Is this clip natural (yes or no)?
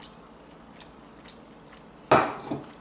yes